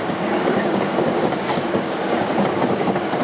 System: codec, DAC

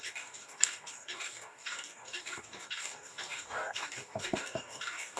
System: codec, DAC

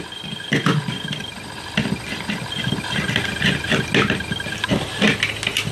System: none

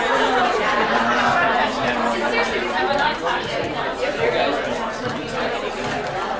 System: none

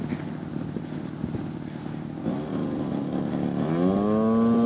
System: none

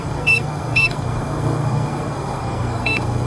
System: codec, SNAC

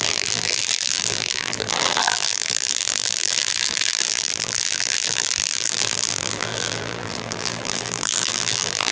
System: vocoder, BigVGAN v2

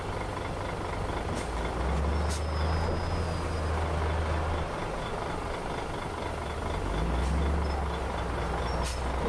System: none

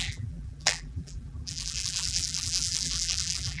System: vocoder, BigVGAN v2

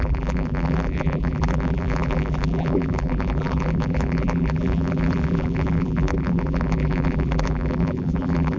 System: vocoder, BigVGAN v2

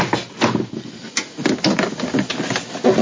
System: none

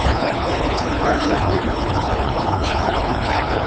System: codec, HILCodec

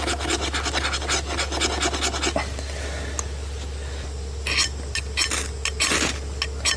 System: none